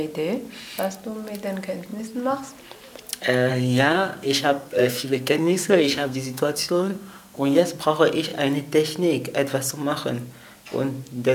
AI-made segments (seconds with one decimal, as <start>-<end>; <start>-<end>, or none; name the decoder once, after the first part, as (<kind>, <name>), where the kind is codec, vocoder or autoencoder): 3.5-7.7 (codec, SNAC)

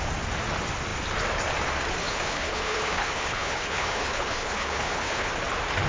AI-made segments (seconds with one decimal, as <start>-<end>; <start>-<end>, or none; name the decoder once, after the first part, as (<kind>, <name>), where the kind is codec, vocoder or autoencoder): 2.0-5.3 (codec, HILCodec)

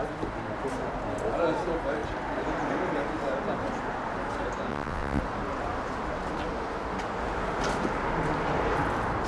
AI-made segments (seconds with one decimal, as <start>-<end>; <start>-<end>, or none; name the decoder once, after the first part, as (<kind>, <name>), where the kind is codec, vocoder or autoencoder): 4.7-5.2 (vocoder, WaveNeXt)

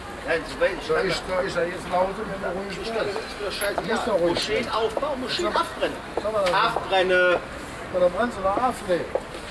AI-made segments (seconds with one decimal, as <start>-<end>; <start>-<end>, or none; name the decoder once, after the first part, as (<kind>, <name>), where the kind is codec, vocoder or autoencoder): none

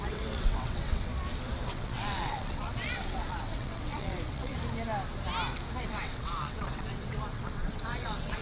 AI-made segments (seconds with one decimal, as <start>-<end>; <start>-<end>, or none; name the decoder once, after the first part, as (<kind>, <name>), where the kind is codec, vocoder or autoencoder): 0.0-1.1 (vocoder, WaveNeXt); 1.7-4.5; 5.8-8.4